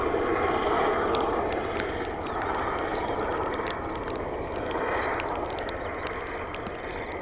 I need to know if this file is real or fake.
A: real